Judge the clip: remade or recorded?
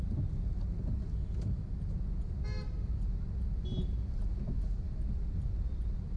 recorded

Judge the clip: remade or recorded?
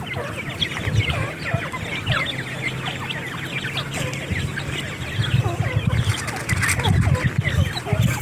recorded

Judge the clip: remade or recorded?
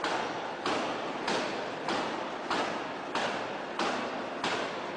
recorded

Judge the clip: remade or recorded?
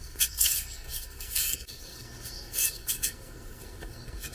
remade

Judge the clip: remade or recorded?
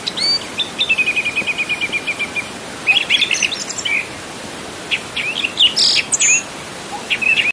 recorded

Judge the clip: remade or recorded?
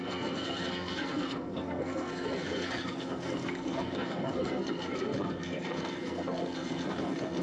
remade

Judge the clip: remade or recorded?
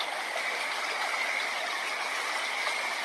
recorded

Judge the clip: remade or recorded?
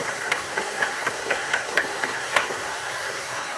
remade